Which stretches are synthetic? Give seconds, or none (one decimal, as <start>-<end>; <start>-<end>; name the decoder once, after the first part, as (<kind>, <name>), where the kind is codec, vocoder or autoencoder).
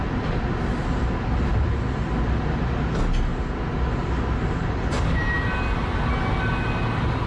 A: none